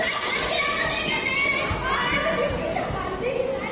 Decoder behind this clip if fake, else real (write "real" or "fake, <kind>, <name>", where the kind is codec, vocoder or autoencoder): real